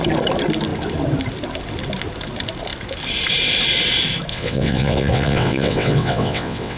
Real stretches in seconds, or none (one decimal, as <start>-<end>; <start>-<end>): 0.0-4.3